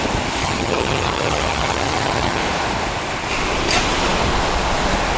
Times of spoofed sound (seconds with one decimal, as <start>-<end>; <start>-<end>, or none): 0.4-2.4